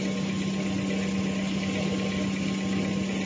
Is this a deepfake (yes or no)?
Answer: no